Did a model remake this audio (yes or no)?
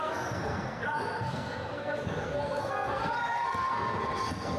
yes